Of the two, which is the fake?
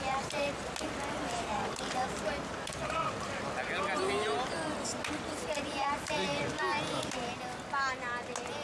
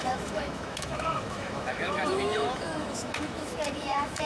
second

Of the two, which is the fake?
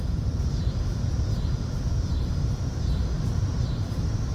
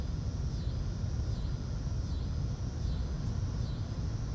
first